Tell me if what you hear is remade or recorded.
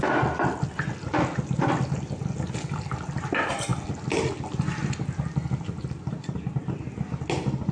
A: recorded